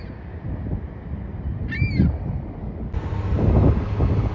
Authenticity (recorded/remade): recorded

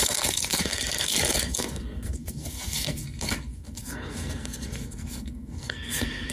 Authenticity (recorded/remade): remade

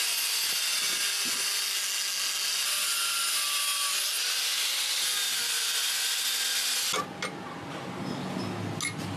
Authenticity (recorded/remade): recorded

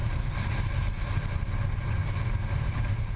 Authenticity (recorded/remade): recorded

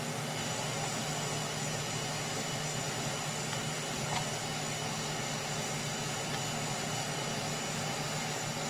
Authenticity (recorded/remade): recorded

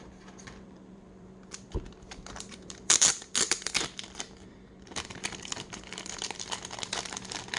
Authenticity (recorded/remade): remade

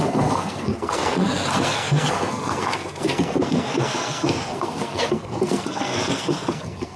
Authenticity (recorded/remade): remade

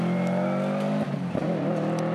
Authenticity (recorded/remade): recorded